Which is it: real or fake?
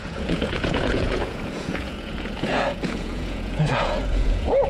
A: fake